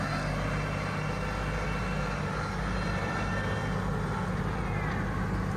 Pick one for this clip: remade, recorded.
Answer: recorded